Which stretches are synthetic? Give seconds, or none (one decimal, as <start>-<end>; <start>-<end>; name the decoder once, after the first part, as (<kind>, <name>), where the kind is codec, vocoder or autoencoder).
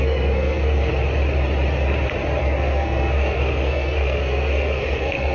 0.0-0.9 (codec, SNAC); 2.4-5.3